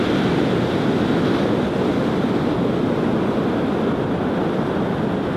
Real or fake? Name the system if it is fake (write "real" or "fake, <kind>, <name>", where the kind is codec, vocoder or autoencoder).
real